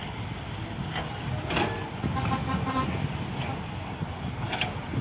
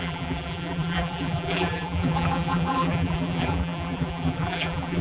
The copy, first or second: second